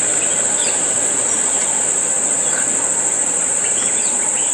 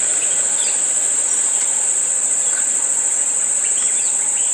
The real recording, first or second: first